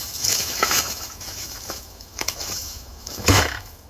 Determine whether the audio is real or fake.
fake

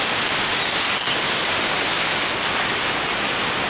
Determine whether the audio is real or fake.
real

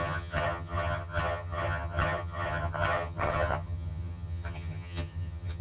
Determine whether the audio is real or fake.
fake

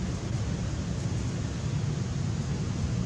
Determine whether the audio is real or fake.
real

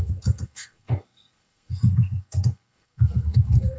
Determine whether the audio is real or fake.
fake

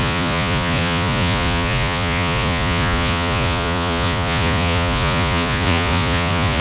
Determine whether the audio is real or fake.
fake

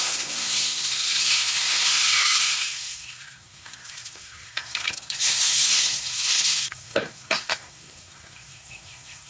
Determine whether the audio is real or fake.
fake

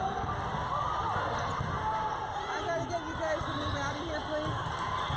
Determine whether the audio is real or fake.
real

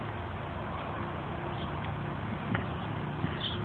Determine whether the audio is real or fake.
real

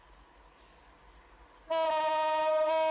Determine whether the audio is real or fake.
real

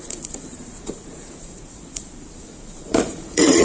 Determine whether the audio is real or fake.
fake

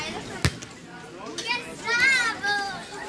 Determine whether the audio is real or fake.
real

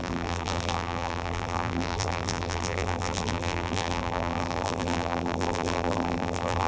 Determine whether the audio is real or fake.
fake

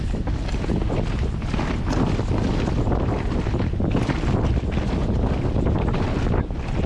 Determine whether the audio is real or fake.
real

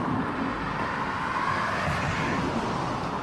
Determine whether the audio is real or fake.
real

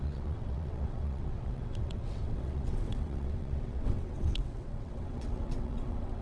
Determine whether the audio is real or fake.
fake